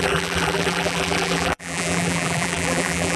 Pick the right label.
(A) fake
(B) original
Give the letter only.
A